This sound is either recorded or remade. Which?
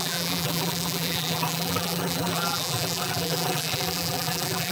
remade